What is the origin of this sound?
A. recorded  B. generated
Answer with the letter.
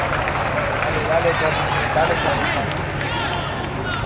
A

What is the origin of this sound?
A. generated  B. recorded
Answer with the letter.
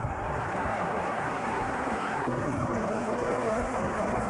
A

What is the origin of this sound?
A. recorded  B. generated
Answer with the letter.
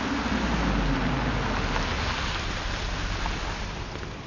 A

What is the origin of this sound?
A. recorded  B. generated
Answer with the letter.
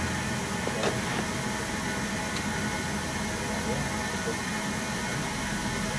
A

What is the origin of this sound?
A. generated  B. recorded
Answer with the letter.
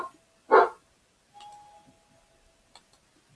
B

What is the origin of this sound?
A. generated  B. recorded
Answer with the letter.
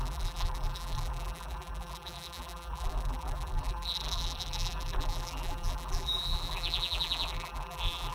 A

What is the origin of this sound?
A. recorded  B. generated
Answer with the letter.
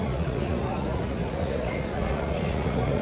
B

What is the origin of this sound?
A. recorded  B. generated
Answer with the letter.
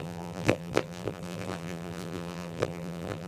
B